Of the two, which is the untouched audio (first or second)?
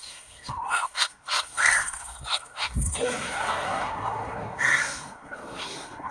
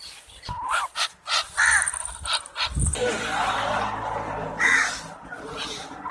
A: second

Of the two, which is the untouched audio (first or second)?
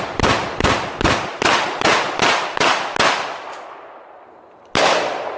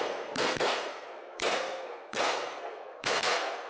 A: first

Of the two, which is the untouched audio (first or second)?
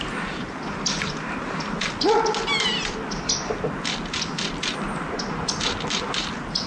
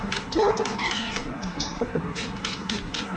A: first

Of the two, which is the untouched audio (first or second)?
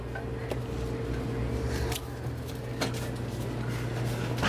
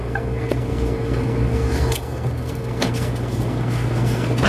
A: first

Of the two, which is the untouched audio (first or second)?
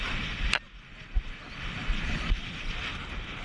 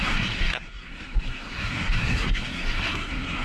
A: first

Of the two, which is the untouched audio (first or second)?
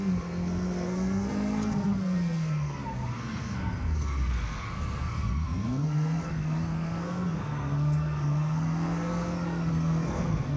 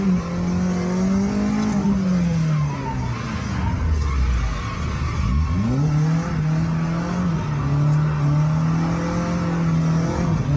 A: second